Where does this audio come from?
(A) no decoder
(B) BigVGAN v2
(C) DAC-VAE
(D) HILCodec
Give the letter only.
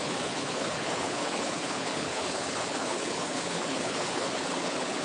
D